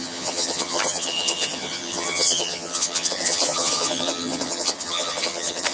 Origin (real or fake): fake